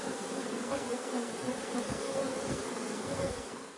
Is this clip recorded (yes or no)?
no